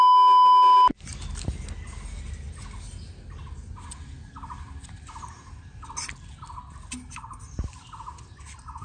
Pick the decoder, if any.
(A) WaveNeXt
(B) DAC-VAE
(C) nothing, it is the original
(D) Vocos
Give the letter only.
C